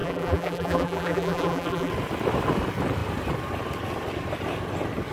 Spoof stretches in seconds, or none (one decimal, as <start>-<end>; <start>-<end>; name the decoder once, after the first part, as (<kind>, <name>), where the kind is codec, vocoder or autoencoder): 0.0-1.9 (vocoder, BigVGAN v2)